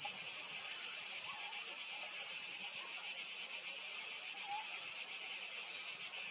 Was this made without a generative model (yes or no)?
yes